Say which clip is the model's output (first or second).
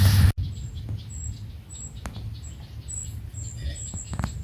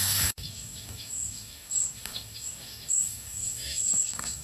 second